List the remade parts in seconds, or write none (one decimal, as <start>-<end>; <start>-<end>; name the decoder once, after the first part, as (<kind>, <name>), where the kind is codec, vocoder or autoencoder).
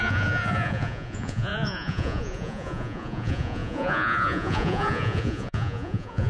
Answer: 0.0-6.3 (vocoder, Vocos)